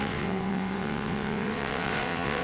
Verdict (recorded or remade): remade